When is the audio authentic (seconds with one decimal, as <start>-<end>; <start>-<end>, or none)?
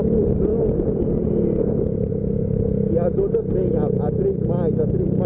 0.0-5.3